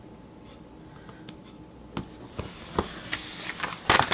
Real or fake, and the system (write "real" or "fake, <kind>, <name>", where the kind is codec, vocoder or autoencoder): real